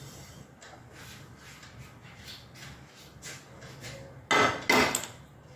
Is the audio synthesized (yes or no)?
no